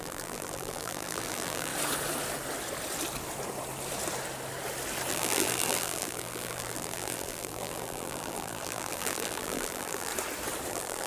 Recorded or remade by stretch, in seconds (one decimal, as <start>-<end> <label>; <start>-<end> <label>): 0.0-1.7 remade; 1.7-5.1 recorded; 5.1-10.1 remade; 10.1-10.7 recorded; 10.7-11.1 remade